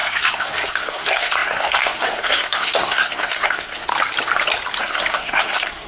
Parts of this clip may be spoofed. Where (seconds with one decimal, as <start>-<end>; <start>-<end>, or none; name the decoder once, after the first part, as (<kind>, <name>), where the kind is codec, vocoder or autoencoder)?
0.0-3.9 (codec, SNAC); 4.8-5.9